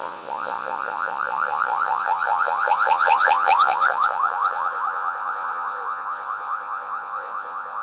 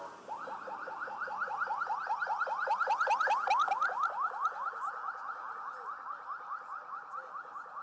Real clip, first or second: second